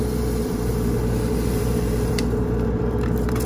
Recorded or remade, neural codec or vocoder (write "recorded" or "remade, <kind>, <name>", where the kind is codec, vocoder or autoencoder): remade, vocoder, BigVGAN v2